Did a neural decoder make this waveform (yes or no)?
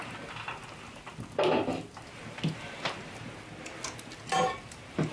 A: no